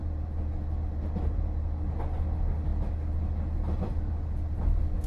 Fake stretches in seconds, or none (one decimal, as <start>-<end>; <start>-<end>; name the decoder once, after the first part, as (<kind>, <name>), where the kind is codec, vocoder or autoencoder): none

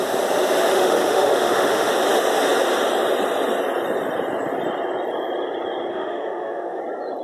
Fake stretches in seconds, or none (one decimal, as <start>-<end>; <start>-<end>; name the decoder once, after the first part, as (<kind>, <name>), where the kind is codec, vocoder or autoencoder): 0.7-1.9 (autoencoder, DAC-VAE); 5.9-6.8